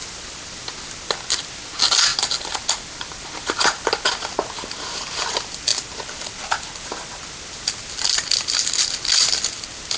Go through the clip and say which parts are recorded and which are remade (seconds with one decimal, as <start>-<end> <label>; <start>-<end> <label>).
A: 0.0-10.0 recorded